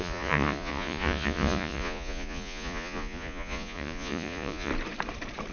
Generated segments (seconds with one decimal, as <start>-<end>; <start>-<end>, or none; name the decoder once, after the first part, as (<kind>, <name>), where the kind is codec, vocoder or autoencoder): 0.0-4.7 (vocoder, Vocos)